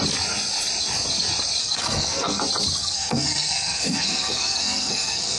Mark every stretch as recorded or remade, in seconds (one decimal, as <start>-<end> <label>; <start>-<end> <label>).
0.0-1.6 recorded; 1.6-2.4 remade; 2.4-2.8 recorded; 2.8-5.4 remade